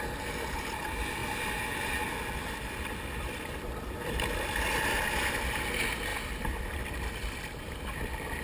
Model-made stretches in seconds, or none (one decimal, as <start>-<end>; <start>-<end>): none